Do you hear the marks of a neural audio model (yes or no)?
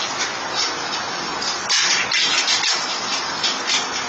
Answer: no